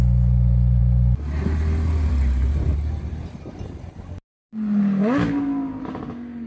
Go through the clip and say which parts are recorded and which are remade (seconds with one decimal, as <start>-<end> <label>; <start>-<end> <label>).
0.0-6.5 recorded

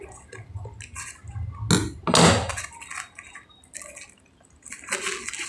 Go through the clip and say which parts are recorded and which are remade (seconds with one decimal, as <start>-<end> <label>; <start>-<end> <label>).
0.0-5.5 recorded

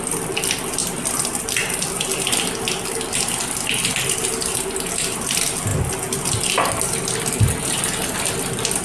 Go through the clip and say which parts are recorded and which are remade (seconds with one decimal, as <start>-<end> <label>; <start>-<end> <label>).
0.0-8.8 recorded

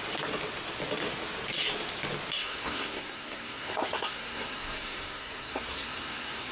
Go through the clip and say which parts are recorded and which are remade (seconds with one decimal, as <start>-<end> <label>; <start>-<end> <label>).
0.0-2.4 recorded; 2.4-6.5 remade

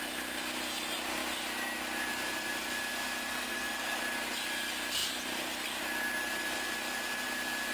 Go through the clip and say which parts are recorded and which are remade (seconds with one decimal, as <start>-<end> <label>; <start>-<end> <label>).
0.0-3.3 recorded; 3.3-4.0 remade; 4.0-7.7 recorded